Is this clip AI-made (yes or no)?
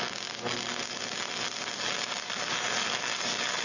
no